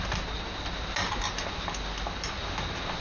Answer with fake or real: real